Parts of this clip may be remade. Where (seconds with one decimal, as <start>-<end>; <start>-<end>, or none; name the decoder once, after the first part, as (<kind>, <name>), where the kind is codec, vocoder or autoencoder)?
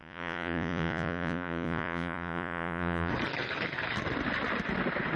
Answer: 0.0-3.1 (vocoder, Vocos)